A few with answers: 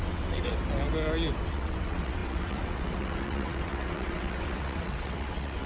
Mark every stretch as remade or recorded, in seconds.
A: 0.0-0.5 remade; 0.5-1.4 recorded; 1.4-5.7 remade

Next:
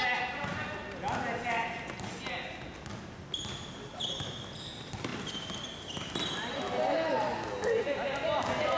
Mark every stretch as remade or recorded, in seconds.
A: 0.0-8.8 recorded